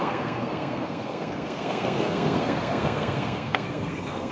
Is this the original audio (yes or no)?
no